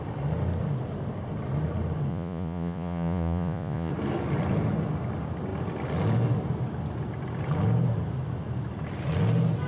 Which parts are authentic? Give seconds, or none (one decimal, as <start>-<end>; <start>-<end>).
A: 0.0-2.1; 3.9-9.7